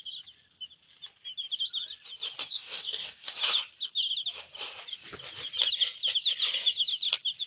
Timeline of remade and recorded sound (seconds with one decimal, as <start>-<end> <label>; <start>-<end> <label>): 0.0-2.5 recorded; 2.5-3.3 remade; 3.3-7.5 recorded